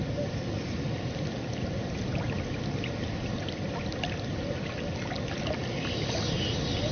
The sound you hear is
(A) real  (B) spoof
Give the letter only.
A